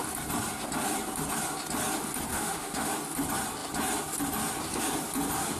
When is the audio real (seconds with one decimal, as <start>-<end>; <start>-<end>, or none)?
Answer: 0.0-2.3; 2.9-5.6